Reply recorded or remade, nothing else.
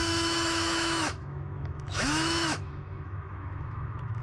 remade